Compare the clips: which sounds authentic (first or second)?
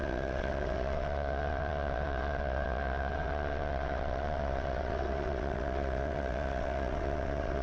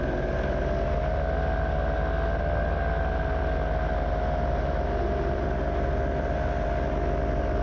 second